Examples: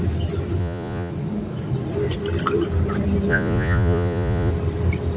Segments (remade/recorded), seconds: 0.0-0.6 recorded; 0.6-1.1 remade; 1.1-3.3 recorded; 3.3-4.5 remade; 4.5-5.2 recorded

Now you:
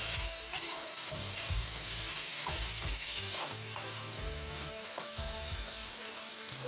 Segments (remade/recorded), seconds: 0.0-6.7 remade

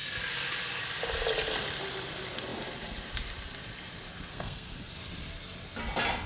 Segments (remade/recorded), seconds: 0.0-4.3 recorded; 4.3-4.9 remade; 4.9-6.3 recorded